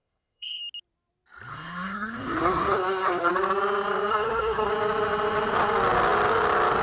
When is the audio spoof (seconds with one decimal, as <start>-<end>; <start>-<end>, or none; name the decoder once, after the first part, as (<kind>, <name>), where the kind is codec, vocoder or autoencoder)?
0.0-0.6 (codec, SNAC); 1.5-3.3; 4.1-4.7